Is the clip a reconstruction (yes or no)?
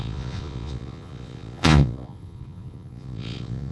yes